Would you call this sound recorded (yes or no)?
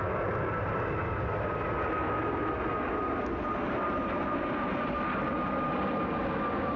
yes